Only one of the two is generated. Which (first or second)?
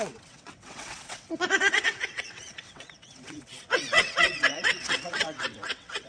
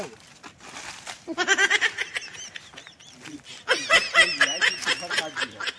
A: first